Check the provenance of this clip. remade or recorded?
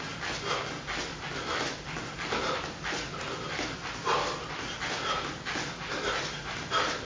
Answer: recorded